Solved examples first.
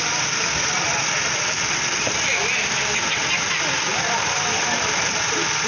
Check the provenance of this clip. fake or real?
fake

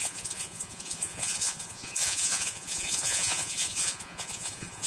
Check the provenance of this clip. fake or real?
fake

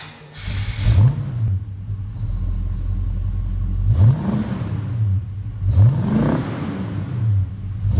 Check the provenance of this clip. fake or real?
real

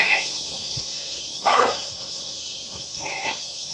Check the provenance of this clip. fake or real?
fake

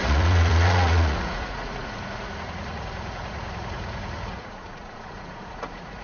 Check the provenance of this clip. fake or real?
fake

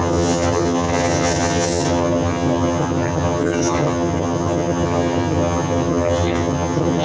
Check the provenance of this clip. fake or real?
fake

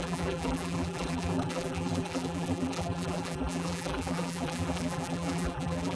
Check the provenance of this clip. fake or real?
fake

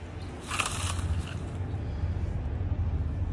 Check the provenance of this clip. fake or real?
real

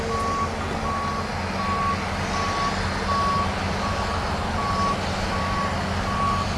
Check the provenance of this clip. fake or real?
real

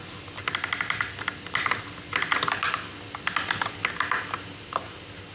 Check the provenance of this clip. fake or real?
real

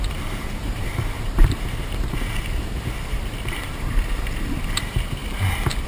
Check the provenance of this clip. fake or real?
fake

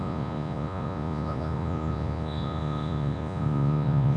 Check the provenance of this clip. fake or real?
fake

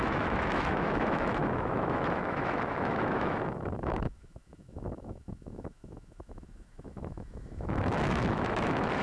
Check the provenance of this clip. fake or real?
fake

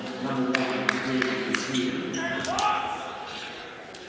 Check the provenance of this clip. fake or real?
real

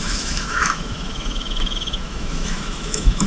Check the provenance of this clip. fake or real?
fake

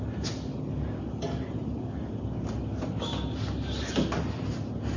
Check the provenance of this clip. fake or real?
real